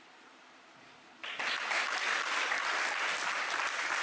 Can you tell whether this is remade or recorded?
remade